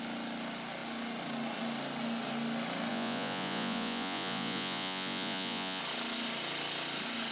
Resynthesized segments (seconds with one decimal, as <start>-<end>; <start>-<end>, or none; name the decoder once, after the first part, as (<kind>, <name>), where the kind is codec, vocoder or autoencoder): 2.9-5.8 (vocoder, Vocos)